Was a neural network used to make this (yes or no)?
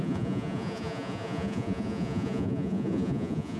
yes